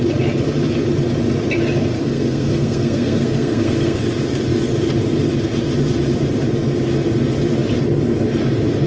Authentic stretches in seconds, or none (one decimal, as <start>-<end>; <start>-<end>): 0.0-2.0; 4.0-8.9